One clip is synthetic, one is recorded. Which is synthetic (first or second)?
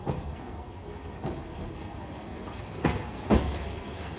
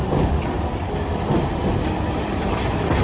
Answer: first